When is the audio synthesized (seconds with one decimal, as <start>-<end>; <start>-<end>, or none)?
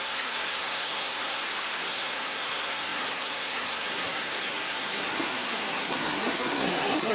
0.0-1.4; 1.9-7.1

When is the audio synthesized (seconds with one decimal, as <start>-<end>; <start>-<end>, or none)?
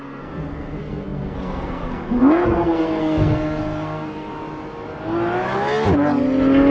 0.0-4.3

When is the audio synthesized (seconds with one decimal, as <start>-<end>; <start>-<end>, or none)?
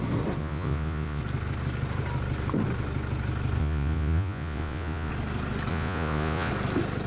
0.4-1.2; 3.6-5.1; 5.7-6.5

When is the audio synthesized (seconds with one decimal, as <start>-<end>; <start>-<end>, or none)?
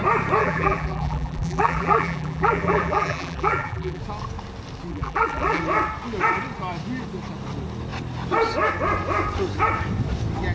0.4-4.0; 4.9-5.6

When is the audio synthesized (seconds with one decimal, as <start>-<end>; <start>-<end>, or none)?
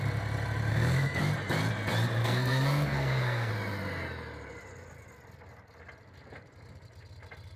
0.7-1.2; 2.2-3.5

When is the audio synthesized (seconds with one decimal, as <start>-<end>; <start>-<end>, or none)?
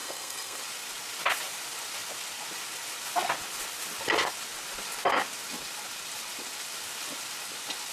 0.0-0.6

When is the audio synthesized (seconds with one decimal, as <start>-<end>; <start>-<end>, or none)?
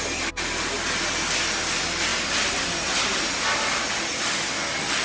none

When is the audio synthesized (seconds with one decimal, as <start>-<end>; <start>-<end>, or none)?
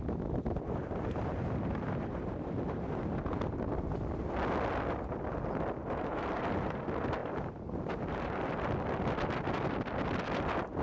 0.8-3.2; 5.8-6.4; 7.2-8.3